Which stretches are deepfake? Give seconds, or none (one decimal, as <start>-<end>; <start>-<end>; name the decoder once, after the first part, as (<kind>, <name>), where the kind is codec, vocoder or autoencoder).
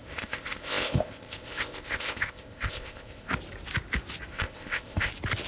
0.0-3.3 (codec, ZipCodec); 4.3-5.1